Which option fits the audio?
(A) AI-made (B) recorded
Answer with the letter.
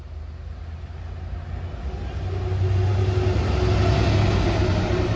B